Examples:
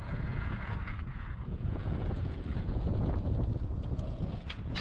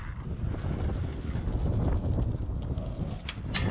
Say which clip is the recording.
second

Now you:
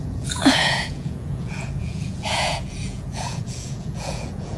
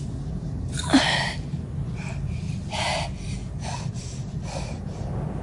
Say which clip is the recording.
second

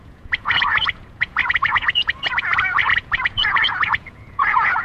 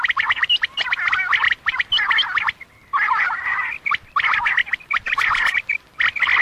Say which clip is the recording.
second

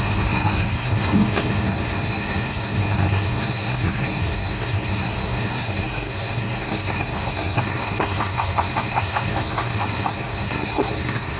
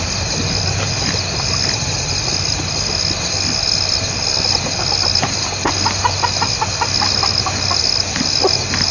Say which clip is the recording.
second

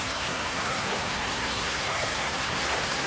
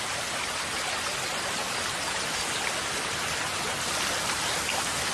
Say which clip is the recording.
second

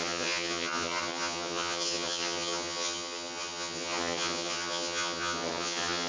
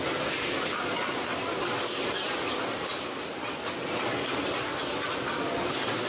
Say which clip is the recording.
second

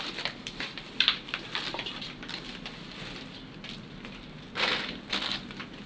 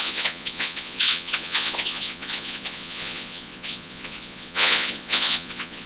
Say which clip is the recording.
first